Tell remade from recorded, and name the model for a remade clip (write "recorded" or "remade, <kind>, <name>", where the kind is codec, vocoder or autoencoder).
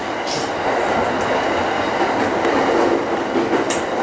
recorded